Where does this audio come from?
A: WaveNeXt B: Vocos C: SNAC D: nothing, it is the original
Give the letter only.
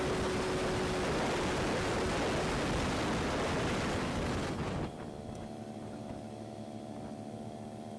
D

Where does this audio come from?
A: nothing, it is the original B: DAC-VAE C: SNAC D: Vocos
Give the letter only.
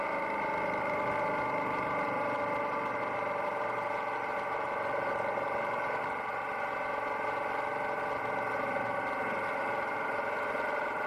A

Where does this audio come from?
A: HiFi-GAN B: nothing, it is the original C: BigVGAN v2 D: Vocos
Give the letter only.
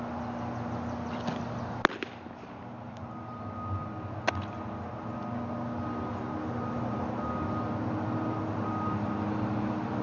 B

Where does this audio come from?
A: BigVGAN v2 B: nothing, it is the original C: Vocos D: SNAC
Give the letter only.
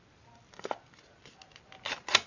B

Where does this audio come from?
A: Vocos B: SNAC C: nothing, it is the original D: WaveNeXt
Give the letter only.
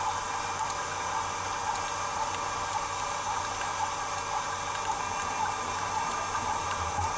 C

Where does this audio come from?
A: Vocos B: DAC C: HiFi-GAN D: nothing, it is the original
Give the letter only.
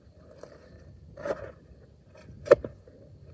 D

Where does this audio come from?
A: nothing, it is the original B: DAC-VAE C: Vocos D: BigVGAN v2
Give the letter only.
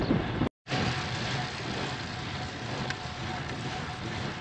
A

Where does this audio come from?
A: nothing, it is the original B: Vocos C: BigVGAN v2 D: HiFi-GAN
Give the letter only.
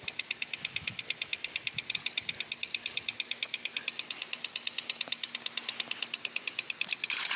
A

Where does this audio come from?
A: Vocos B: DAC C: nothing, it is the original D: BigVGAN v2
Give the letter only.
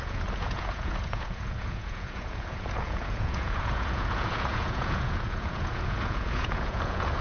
A